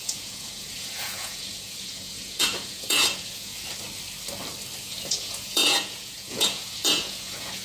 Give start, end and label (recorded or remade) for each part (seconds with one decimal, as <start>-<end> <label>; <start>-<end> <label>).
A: 0.0-3.5 remade; 3.5-4.8 recorded; 4.8-7.6 remade